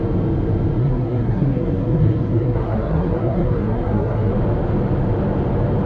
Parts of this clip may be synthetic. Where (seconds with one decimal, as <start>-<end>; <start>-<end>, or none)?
0.8-4.3